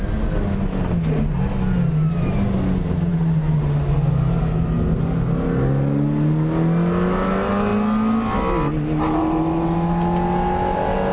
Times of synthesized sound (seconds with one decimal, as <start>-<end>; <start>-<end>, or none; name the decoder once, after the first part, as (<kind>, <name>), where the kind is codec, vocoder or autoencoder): none